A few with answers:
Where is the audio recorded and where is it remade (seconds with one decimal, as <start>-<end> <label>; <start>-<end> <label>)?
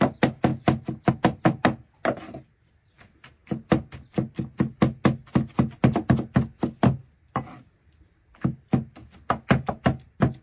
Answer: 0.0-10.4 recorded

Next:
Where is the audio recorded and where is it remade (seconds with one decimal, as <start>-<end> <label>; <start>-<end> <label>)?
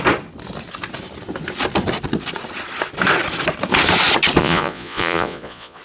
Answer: 0.0-4.4 recorded; 4.4-5.8 remade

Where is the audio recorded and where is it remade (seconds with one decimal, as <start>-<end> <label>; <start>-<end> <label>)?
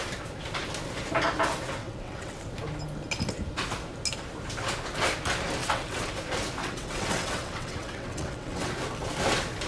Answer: 0.0-1.8 recorded; 1.8-2.4 remade; 2.4-5.6 recorded; 5.6-6.1 remade; 6.1-6.6 recorded; 6.6-8.7 remade; 8.7-9.7 recorded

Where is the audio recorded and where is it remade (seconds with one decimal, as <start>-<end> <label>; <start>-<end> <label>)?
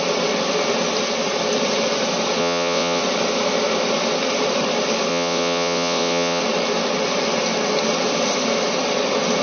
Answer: 0.0-2.4 recorded; 2.4-3.0 remade; 3.0-5.1 recorded; 5.1-6.4 remade; 6.4-9.4 recorded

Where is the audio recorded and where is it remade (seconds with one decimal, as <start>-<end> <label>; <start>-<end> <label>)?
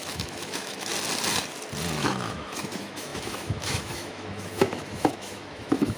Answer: 0.0-0.9 remade; 0.9-2.0 recorded; 2.0-6.0 remade